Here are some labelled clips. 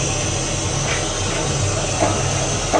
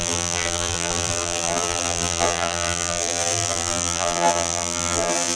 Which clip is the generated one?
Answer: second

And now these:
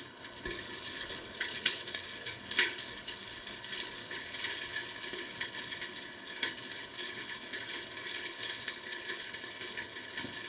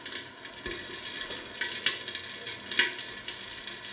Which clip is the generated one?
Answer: first